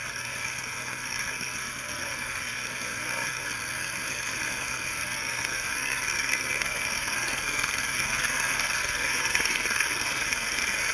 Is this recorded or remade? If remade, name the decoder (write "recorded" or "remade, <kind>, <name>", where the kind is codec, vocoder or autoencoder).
remade, codec, SNAC